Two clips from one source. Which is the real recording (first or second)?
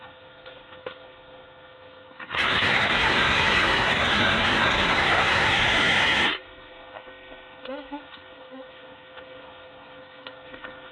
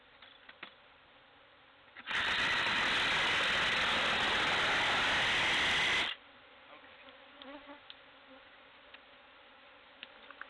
second